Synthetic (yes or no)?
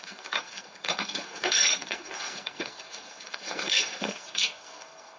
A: yes